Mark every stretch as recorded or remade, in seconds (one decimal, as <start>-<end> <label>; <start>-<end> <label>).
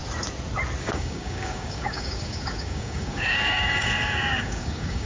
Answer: 0.0-0.8 recorded; 0.8-5.1 remade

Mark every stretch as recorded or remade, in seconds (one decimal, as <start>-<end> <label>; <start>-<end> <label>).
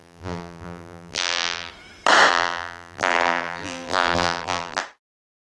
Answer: 0.0-1.7 remade; 1.7-2.3 recorded; 2.3-4.8 remade; 4.8-5.6 recorded